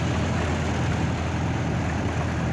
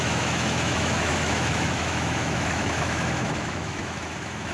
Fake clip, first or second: second